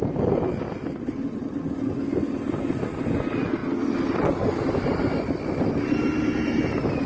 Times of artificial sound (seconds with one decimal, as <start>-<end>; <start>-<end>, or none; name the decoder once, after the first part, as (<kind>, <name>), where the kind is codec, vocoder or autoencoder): none